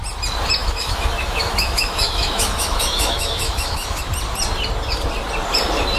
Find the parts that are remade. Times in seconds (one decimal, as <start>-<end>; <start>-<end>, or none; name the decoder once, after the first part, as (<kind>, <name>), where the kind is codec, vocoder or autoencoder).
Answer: 0.6-4.0 (autoencoder, DAC-VAE)